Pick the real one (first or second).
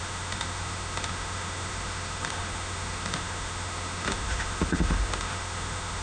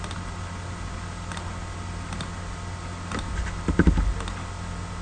second